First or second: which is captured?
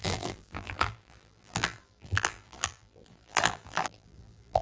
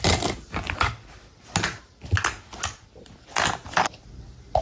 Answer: second